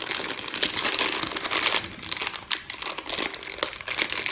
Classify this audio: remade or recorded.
recorded